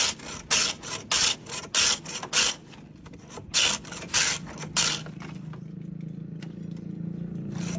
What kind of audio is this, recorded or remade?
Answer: recorded